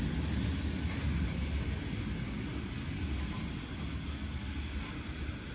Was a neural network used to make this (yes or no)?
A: no